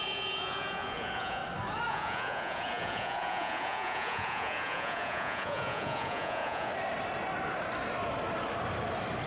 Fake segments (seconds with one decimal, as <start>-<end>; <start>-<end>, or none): 0.0-1.4; 1.9-6.7